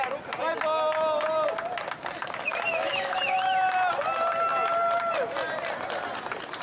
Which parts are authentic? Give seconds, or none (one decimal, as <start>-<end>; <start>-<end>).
0.0-2.7; 3.2-6.6